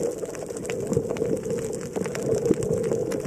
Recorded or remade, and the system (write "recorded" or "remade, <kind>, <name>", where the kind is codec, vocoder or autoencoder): recorded